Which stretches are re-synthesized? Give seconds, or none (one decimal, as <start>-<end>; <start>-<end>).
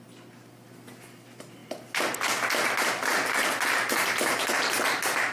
none